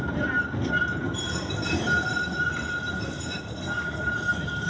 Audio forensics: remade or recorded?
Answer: recorded